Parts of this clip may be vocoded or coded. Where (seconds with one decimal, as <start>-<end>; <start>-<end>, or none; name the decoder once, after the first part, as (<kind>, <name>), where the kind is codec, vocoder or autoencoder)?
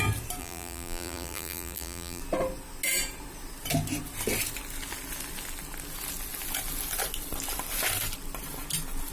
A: 0.4-2.2 (vocoder, BigVGAN v2)